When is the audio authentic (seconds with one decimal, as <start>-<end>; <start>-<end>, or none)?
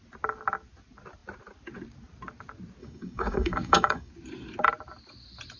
0.0-2.8; 4.1-5.6